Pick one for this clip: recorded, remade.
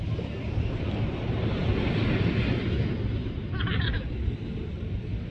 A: recorded